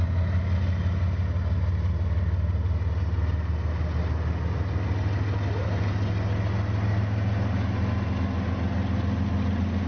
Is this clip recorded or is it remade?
recorded